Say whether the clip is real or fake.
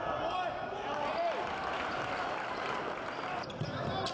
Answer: real